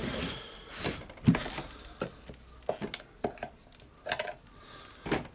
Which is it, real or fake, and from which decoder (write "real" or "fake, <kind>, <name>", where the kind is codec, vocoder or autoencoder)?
real